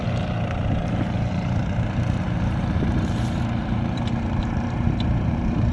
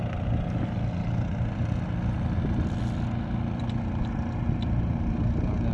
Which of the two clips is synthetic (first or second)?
first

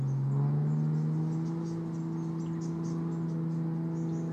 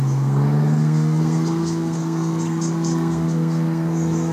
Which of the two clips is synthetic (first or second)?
second